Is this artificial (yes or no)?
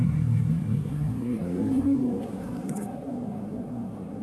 yes